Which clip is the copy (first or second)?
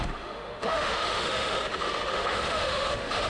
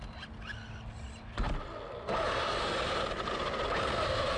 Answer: first